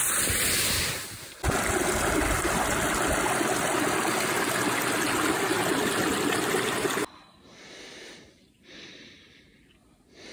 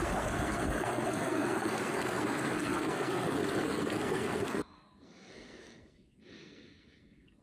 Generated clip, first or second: second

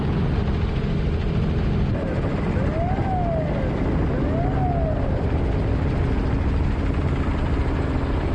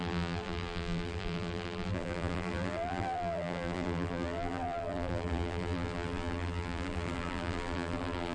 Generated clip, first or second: second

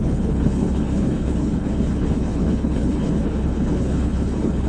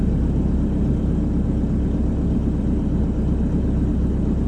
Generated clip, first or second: first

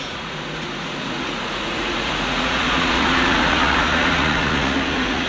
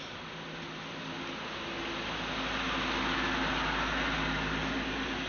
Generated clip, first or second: first